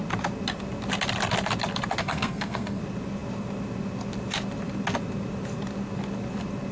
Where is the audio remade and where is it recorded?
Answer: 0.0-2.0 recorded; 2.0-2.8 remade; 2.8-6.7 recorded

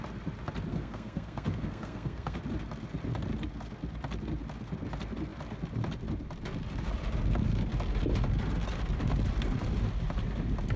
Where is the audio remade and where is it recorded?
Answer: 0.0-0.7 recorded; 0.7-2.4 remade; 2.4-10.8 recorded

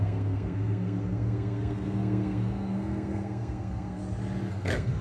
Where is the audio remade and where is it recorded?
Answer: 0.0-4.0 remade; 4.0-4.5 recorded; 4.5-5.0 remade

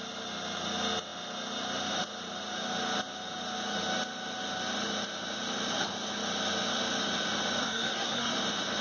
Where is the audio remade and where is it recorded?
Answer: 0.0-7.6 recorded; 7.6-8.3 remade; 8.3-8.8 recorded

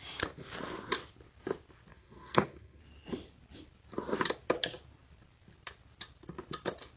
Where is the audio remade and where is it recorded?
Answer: 0.0-1.9 recorded; 1.9-2.8 remade; 2.8-7.0 recorded

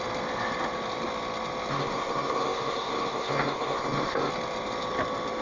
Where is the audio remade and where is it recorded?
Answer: 0.0-1.7 recorded; 1.7-4.3 remade; 4.3-5.4 recorded

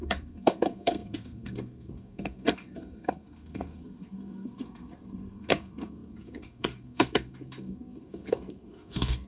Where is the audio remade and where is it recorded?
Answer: 0.0-9.3 remade

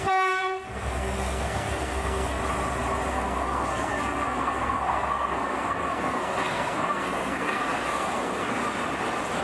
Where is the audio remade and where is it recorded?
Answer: 0.0-2.4 remade; 2.4-3.1 recorded; 3.1-8.6 remade; 8.6-9.4 recorded